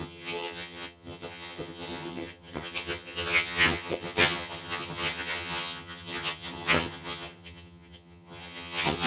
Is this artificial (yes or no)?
yes